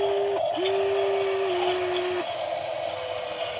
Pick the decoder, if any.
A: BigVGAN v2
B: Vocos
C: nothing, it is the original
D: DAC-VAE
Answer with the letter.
C